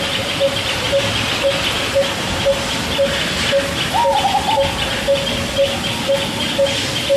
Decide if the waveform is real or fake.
real